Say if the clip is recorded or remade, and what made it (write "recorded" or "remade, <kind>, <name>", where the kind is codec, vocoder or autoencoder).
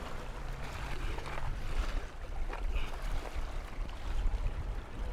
recorded